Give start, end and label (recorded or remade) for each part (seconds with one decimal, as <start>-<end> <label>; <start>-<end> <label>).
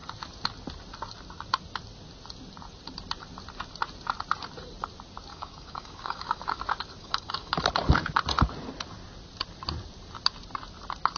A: 0.0-5.3 recorded; 5.3-6.6 remade; 6.6-7.0 recorded; 7.0-7.6 remade; 7.6-11.2 recorded